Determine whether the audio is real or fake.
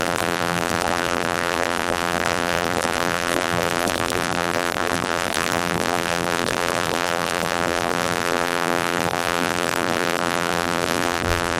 fake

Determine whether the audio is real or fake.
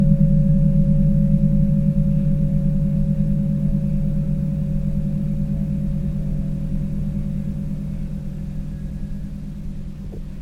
real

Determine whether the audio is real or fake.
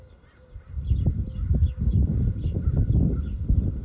real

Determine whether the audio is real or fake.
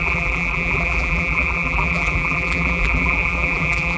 fake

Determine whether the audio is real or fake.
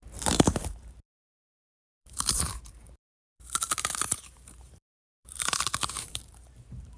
fake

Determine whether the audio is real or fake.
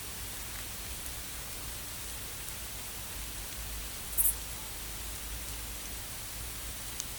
real